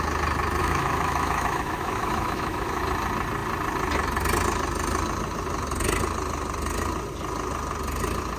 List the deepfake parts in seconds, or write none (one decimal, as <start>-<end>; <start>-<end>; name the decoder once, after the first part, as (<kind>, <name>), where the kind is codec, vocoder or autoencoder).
0.6-2.8 (autoencoder, DAC-VAE)